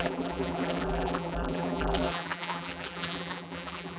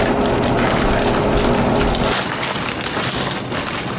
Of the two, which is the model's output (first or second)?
first